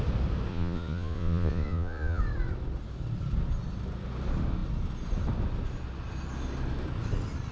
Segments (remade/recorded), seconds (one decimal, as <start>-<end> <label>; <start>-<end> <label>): 0.0-0.5 recorded; 0.5-2.2 remade; 2.2-7.5 recorded